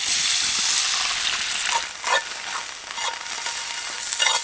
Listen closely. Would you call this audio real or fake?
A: real